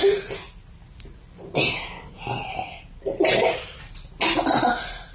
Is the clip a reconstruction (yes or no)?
no